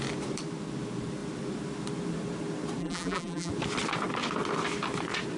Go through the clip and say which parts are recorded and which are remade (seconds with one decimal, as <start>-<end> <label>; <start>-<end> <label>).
0.0-2.8 recorded; 2.8-3.5 remade; 3.5-5.4 recorded